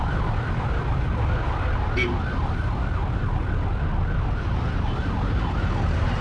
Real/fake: real